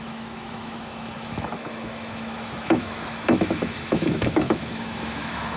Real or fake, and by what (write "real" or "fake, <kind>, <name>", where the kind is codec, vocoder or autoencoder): fake, autoencoder, DAC-VAE